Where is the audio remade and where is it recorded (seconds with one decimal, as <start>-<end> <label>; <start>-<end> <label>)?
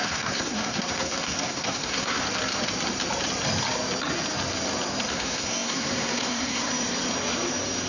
0.0-2.2 remade; 2.2-5.1 recorded; 5.1-6.7 remade; 6.7-7.9 recorded